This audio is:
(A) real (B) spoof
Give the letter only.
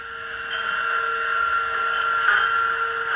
A